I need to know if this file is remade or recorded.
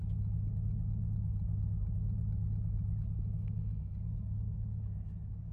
recorded